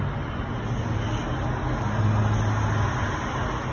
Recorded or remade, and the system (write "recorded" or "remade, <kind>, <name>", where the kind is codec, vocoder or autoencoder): recorded